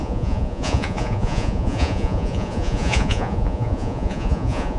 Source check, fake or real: fake